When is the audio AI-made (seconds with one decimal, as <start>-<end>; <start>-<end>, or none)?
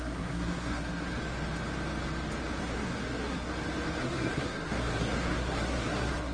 0.0-1.2; 2.6-3.5; 4.0-6.3